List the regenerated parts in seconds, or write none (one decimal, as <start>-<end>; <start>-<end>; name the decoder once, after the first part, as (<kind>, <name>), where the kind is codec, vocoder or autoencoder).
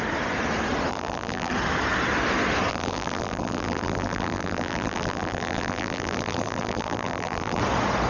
0.9-1.5 (vocoder, BigVGAN v2); 2.7-7.6